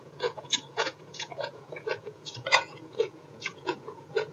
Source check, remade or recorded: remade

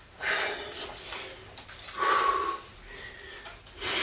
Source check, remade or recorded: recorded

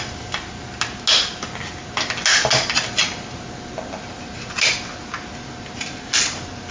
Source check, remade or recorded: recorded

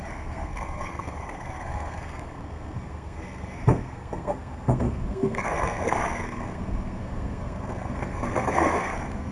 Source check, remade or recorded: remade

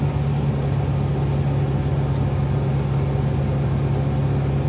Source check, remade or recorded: recorded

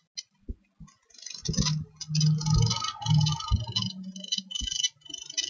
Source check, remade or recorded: recorded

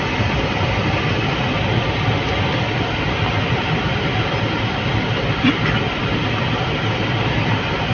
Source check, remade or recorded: recorded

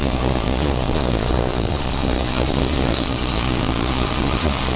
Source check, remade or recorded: remade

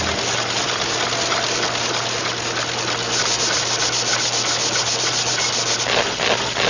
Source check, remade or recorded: recorded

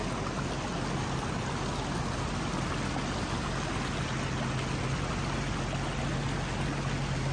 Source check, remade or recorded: recorded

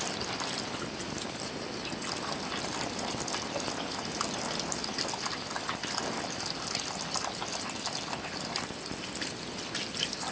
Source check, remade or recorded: recorded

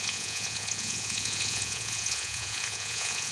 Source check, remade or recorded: remade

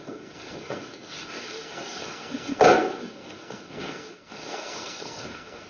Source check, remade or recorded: remade